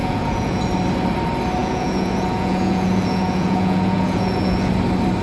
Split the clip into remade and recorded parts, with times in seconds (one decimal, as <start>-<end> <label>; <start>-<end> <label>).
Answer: 0.0-0.6 remade; 0.6-1.6 recorded; 1.6-4.7 remade; 4.7-5.2 recorded